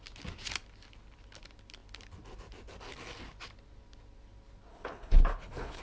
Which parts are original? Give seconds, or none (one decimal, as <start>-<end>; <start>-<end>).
0.0-4.7